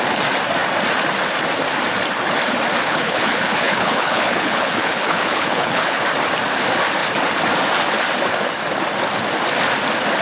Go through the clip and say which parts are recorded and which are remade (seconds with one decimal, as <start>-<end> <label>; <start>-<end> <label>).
0.0-2.8 recorded; 2.8-6.0 remade; 6.0-10.2 recorded